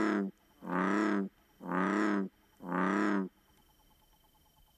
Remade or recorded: recorded